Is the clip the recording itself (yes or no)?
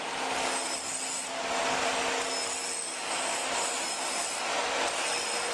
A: yes